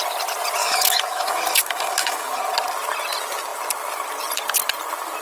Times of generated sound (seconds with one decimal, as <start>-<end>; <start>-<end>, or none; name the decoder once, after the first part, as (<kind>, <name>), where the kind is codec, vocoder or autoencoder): 0.6-2.4 (autoencoder, DAC-VAE)